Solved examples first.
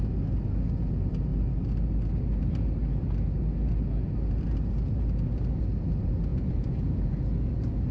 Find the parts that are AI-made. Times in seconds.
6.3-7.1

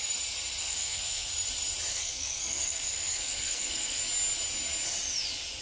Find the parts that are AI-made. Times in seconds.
0.6-1.3; 1.9-4.0

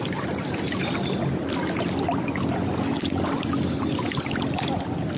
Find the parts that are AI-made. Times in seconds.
none